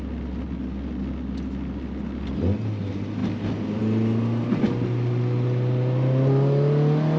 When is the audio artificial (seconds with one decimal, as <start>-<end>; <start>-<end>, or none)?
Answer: none